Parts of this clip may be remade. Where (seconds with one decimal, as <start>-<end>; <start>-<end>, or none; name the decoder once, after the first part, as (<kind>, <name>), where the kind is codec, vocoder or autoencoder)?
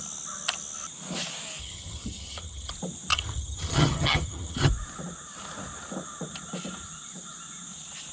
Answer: 1.6-2.7 (vocoder, HiFi-GAN); 3.1-4.7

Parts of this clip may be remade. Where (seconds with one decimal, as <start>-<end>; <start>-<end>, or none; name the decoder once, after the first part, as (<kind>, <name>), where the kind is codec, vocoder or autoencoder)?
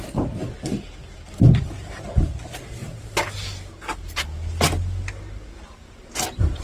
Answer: none